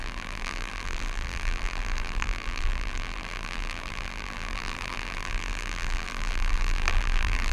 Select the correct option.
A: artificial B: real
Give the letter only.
A